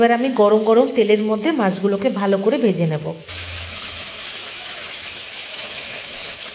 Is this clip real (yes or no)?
no